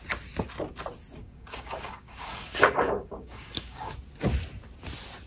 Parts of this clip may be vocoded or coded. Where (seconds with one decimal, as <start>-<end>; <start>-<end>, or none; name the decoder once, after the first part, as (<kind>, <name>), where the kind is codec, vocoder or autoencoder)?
1.2-3.9 (codec, DAC)